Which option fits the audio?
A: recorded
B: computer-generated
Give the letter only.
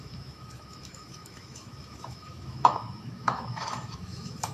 B